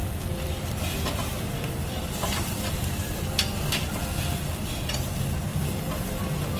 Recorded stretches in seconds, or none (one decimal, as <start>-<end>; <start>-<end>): 5.5-6.6